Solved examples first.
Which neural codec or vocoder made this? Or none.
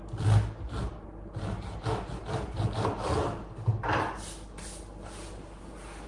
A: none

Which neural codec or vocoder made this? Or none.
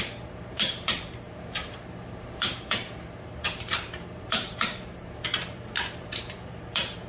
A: vocoder, BigVGAN v2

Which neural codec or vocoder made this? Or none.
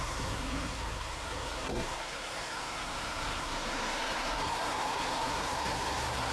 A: codec, SNAC